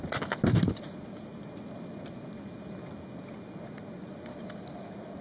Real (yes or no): yes